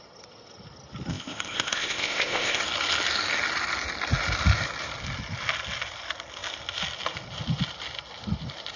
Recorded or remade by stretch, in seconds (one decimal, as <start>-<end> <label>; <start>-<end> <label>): 0.0-1.1 recorded; 1.1-2.6 remade; 2.6-8.8 recorded